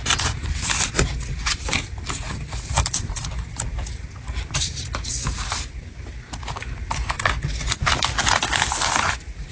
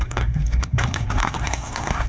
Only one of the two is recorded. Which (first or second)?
first